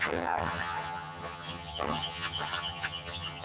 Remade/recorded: remade